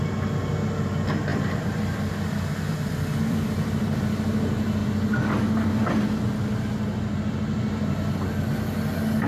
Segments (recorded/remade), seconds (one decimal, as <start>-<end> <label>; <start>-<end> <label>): 0.0-1.3 recorded; 1.3-4.0 remade; 4.0-9.3 recorded

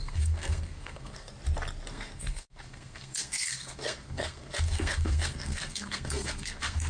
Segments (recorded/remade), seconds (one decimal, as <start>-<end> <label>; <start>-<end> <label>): 0.0-1.3 remade; 1.3-1.9 recorded; 1.9-6.9 remade

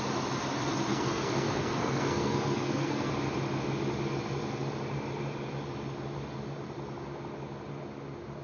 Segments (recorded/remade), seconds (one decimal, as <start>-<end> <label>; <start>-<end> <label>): 0.0-0.9 recorded; 0.9-3.1 remade; 3.1-8.4 recorded

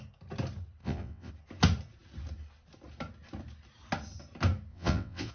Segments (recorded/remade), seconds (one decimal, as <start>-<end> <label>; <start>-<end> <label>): 0.0-0.8 recorded; 0.8-1.3 remade; 1.3-4.7 recorded; 4.7-5.3 remade

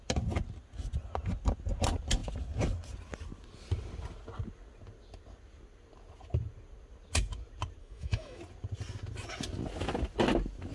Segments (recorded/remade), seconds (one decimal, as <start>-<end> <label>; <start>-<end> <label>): 0.0-7.8 recorded; 7.8-8.4 remade; 8.4-10.7 recorded

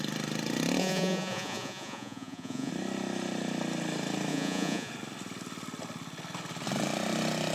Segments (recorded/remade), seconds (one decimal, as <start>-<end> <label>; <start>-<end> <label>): 0.0-0.8 recorded; 0.8-2.7 remade; 2.7-4.3 recorded; 4.3-4.9 remade; 4.9-7.5 recorded